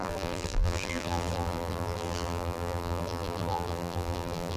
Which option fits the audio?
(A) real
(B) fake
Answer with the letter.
B